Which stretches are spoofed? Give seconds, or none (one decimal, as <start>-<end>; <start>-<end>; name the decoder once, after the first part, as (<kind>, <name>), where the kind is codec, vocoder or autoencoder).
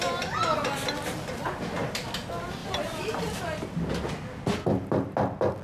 2.6-3.4 (vocoder, BigVGAN v2)